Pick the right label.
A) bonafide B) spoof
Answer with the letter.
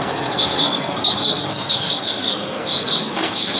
B